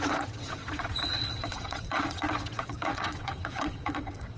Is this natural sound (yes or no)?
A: no